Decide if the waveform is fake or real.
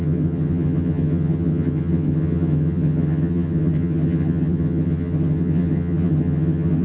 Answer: fake